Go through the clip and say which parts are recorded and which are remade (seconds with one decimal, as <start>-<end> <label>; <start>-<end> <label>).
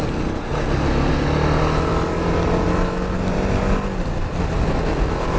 0.0-5.4 recorded